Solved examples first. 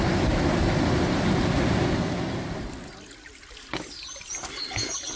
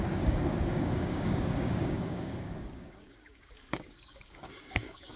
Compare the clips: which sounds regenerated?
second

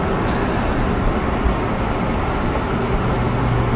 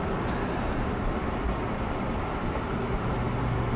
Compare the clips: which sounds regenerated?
second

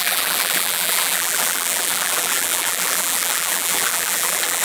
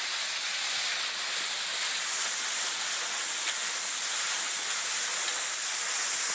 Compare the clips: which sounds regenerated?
first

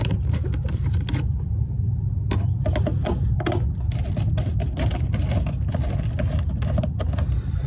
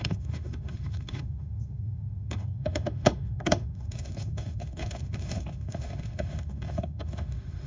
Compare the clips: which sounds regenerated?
second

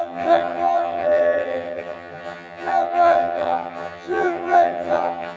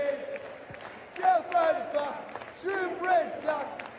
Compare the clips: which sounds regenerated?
first